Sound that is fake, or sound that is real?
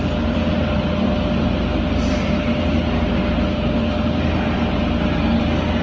real